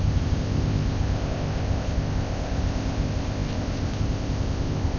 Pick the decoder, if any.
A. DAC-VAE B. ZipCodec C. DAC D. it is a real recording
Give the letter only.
B